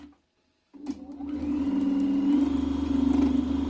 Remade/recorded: recorded